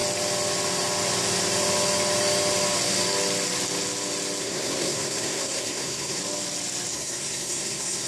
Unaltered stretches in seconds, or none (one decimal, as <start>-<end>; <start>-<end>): 0.0-4.4; 6.2-6.9